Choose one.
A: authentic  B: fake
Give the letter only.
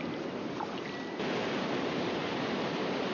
A